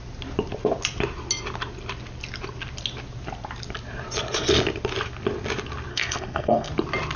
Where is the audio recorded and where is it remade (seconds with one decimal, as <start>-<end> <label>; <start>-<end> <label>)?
0.0-5.9 recorded; 5.9-6.7 remade; 6.7-7.2 recorded

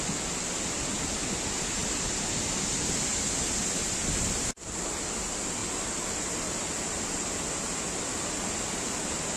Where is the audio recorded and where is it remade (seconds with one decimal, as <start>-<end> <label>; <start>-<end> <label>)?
0.0-1.8 recorded; 1.8-5.0 remade; 5.0-9.4 recorded